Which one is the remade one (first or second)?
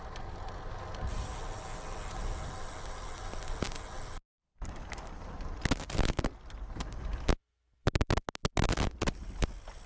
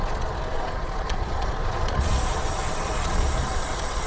second